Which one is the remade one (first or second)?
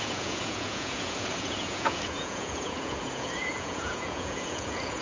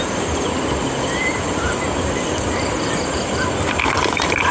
first